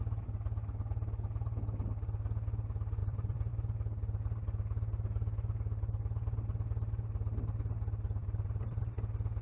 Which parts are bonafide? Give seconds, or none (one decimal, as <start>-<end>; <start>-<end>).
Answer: 0.0-3.0; 3.5-8.2; 8.8-9.4